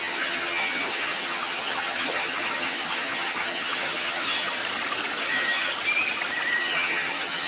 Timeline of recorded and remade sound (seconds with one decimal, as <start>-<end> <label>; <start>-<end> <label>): 0.0-4.6 remade; 4.6-5.2 recorded; 5.2-5.7 remade; 5.7-6.6 recorded; 6.6-7.5 remade